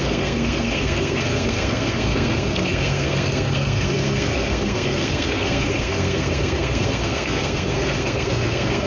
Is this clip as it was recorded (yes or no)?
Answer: no